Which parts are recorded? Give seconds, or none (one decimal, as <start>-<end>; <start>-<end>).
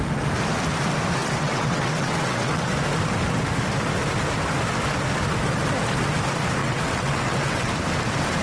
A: 0.0-1.2; 2.7-6.6; 7.7-8.4